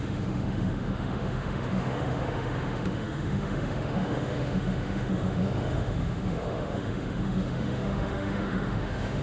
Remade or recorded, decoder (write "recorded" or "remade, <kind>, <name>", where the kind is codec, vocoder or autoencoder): remade, autoencoder, DAC-VAE